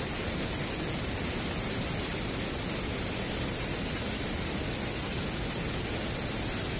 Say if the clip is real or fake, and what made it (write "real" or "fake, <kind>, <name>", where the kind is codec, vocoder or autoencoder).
real